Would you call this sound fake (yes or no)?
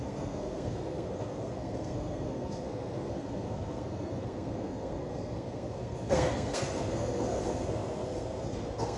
yes